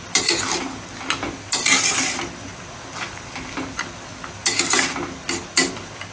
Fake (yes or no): no